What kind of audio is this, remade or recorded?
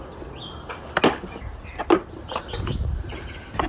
recorded